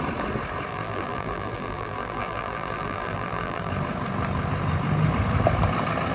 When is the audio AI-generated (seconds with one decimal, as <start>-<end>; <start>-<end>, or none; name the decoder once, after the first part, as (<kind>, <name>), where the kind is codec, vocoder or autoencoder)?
0.7-3.7 (vocoder, BigVGAN v2)